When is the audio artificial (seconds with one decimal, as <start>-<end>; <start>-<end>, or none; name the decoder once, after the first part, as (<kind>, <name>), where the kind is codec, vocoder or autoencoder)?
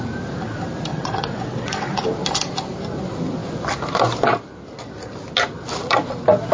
0.9-2.0 (vocoder, WaveNeXt)